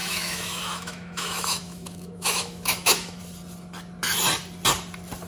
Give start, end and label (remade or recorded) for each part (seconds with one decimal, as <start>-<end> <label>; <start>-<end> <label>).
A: 0.0-3.2 remade; 3.2-5.3 recorded